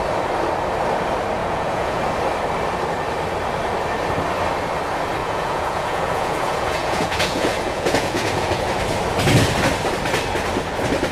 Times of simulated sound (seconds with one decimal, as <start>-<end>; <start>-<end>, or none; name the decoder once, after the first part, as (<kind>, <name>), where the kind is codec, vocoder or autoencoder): 1.4-2.0 (vocoder, Vocos); 5.2-8.7